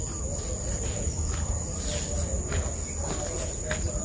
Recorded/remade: recorded